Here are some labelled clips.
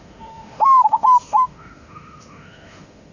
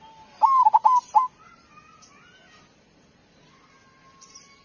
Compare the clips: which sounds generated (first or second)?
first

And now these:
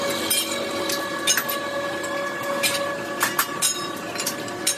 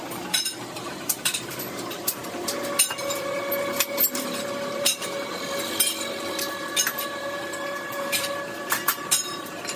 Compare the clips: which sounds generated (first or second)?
second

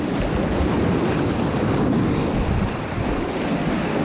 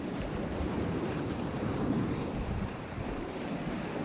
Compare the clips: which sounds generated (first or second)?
second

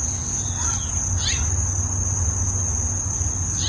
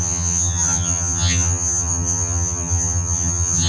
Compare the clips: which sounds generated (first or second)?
second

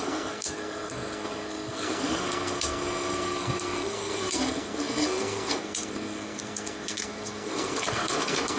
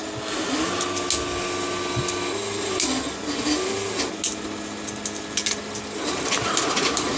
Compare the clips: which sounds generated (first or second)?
first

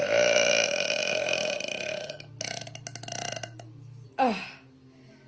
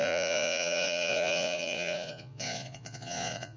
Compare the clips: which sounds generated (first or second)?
second